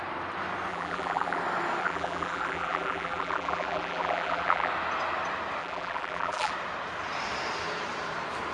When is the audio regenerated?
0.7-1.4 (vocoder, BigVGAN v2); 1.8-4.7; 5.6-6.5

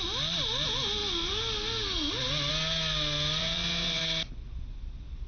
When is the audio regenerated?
3.4-4.0 (vocoder, WaveNeXt)

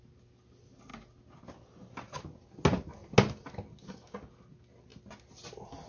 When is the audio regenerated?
none

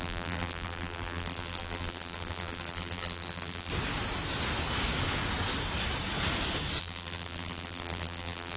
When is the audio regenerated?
0.0-3.7 (vocoder, BigVGAN v2); 6.8-8.6

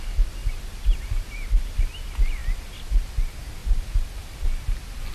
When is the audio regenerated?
none

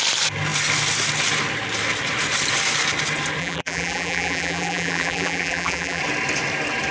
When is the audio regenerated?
3.4-6.0 (vocoder, BigVGAN v2)

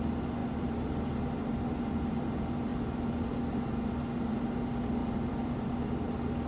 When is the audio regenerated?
0.4-1.2 (vocoder, BigVGAN v2); 2.7-3.3; 5.0-5.7

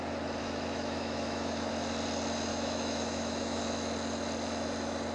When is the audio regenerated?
0.4-1.7 (autoencoder, DAC-VAE); 2.5-3.6